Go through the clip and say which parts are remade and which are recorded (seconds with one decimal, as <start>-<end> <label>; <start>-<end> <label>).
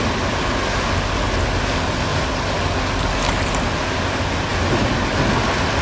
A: 0.0-5.8 recorded